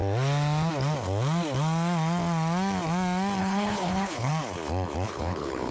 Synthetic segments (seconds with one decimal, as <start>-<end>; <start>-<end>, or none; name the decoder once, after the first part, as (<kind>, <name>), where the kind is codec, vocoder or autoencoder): 3.4-4.3 (codec, HILCodec); 5.1-5.7